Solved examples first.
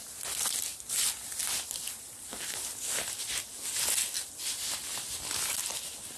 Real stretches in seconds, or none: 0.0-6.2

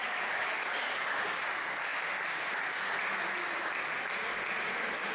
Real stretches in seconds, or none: 1.5-5.1

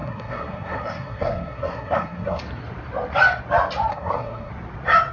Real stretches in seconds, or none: 2.4-3.9; 4.5-5.1

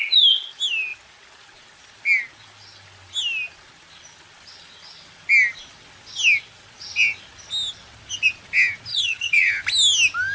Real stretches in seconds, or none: 0.0-8.9; 9.5-10.3

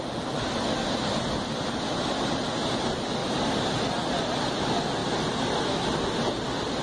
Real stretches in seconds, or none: 0.0-6.8

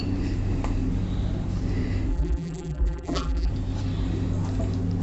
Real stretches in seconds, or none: 0.0-2.1; 3.5-5.0

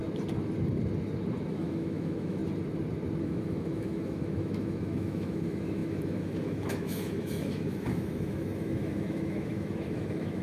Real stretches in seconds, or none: 0.0-1.5; 2.4-3.2